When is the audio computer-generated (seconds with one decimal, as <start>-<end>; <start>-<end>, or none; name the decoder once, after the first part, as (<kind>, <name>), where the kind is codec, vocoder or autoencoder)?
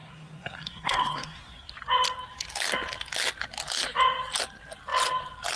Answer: 0.0-1.7 (codec, SNAC)